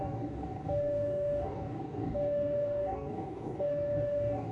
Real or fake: fake